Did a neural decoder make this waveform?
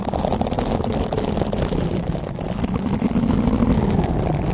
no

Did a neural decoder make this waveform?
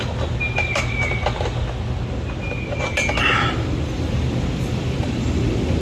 no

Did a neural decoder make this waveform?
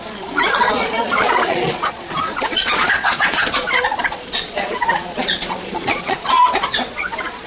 yes